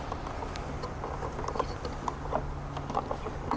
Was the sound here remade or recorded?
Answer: recorded